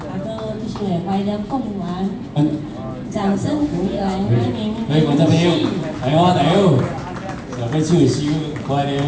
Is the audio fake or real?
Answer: real